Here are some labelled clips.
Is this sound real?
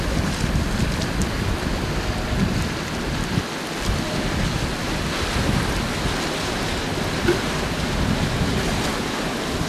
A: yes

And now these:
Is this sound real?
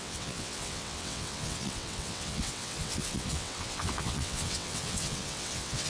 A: no